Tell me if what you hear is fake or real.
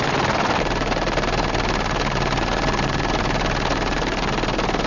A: real